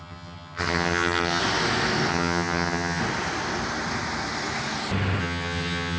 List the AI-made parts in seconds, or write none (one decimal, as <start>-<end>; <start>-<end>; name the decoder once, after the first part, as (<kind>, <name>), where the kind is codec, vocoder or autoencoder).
0.0-1.4 (vocoder, HiFi-GAN); 2.1-3.0; 5.2-6.0